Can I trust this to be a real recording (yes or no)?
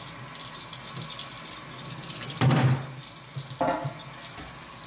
yes